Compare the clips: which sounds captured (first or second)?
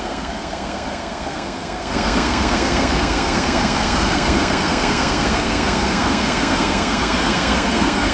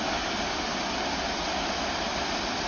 second